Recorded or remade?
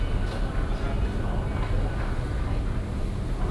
recorded